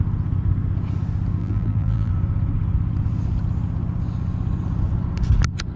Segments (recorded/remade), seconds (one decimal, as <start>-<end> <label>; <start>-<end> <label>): 0.0-1.4 recorded; 1.4-2.1 remade; 2.1-5.8 recorded